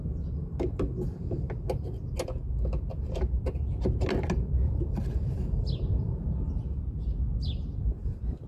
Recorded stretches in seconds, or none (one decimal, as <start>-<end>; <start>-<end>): 0.0-8.5